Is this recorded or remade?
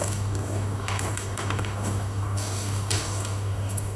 remade